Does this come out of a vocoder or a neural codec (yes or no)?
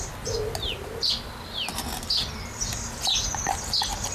no